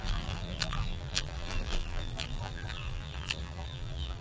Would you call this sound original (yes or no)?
no